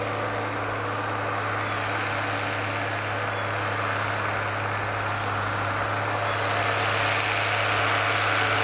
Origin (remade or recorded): recorded